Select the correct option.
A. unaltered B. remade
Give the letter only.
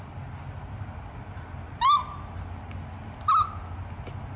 A